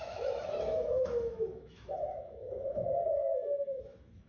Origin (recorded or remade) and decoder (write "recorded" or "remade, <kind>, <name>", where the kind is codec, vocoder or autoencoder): remade, autoencoder, DAC-VAE